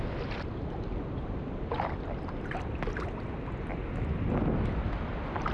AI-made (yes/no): no